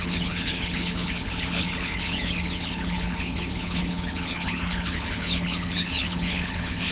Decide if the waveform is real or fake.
fake